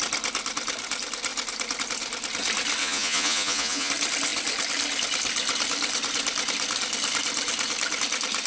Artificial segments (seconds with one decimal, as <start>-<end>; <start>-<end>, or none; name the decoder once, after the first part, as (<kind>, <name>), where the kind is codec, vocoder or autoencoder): 2.8-3.9 (vocoder, Vocos)